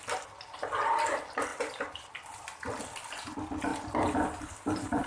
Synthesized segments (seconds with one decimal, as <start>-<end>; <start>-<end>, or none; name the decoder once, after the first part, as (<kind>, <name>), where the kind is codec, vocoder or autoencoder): none